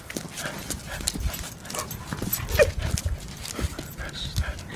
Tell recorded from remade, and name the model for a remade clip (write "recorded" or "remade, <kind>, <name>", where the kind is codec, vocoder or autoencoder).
recorded